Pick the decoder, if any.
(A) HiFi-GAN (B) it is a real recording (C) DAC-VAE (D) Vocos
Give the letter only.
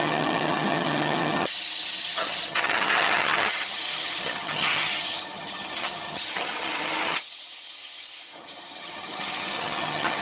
A